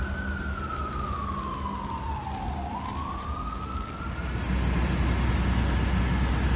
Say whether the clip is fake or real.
real